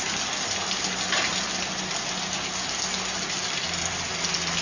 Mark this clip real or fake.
real